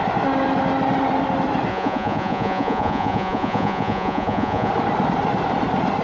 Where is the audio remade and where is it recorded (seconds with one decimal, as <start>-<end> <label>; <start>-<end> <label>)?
0.0-1.7 recorded; 1.7-4.7 remade; 4.7-6.0 recorded